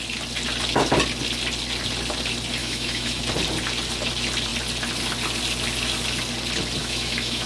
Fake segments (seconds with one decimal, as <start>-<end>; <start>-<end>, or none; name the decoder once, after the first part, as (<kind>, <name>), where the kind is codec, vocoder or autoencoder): 2.6-3.2 (autoencoder, DAC-VAE); 6.8-7.5